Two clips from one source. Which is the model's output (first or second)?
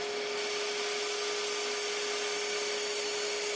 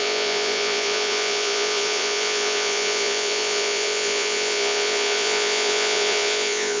second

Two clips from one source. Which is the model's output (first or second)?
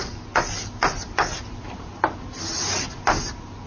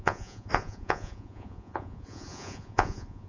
second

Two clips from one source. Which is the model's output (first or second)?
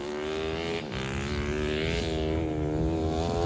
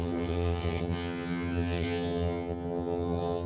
second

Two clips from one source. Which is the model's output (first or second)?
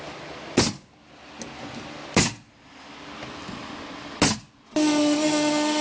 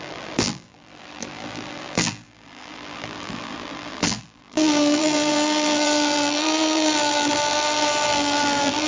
second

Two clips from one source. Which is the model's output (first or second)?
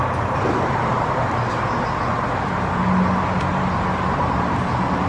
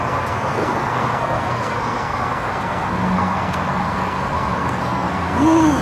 second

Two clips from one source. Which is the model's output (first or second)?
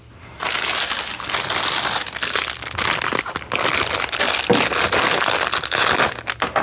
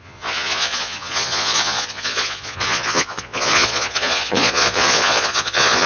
second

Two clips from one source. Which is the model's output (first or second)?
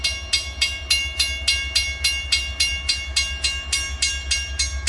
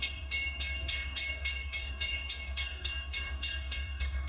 second